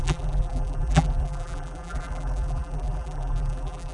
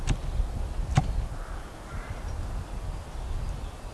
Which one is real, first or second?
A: second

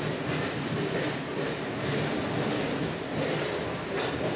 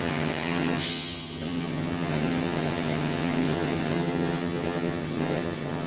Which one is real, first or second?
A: first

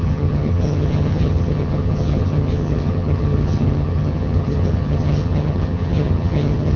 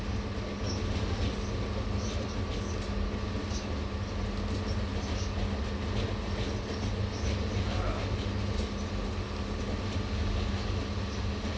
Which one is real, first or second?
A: second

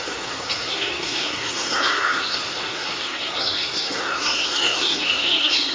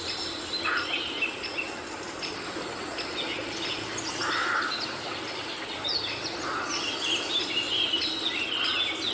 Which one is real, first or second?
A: second